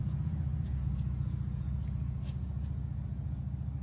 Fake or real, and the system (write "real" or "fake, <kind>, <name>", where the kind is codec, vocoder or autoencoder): fake, vocoder, Vocos